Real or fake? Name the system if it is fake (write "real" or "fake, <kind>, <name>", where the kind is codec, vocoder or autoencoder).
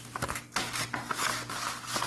real